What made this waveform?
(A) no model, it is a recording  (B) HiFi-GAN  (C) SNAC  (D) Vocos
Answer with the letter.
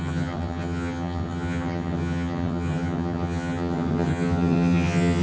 B